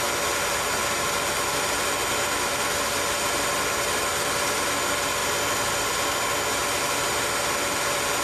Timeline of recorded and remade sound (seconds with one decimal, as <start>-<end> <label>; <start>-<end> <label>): 0.0-8.2 recorded